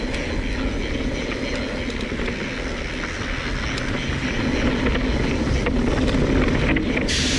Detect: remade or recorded recorded